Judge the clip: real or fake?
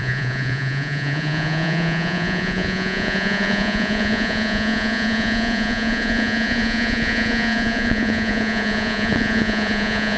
fake